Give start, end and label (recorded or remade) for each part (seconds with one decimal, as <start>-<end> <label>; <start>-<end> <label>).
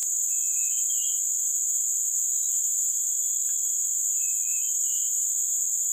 0.0-2.3 recorded; 2.3-5.9 remade